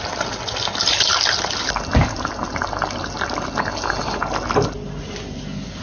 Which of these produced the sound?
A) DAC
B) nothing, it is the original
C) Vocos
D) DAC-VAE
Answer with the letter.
B